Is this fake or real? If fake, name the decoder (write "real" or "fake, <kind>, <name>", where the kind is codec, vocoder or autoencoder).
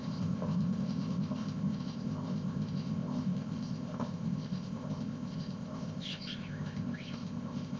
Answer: fake, codec, ZipCodec